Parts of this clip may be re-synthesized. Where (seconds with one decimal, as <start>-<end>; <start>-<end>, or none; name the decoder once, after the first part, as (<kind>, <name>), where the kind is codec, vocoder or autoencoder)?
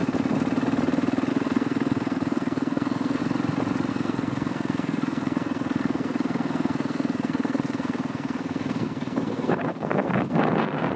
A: 1.3-3.2 (codec, SNAC); 3.9-11.0